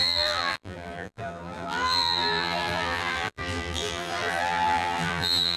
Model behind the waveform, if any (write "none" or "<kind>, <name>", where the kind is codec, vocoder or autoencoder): vocoder, BigVGAN v2